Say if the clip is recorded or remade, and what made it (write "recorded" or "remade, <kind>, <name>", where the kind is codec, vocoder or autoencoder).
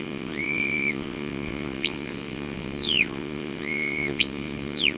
remade, vocoder, WaveNeXt